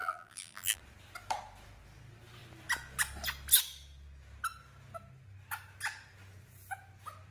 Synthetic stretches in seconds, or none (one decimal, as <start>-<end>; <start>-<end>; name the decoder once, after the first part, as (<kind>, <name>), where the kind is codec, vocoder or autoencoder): 0.0-0.8 (vocoder, BigVGAN v2)